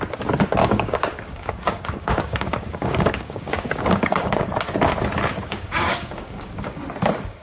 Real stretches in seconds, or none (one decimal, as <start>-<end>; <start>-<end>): 0.0-0.6; 4.4-5.3; 6.8-7.4